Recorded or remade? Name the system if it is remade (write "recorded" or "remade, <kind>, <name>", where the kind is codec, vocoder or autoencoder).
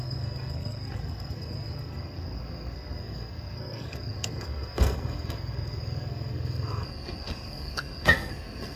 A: remade, codec, SNAC